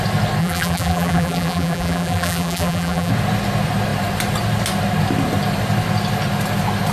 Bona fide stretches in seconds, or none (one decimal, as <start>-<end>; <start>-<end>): 0.0-0.4; 3.1-6.9